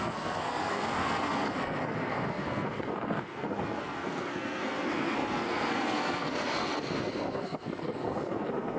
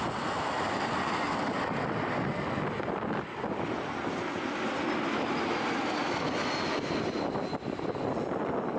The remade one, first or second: first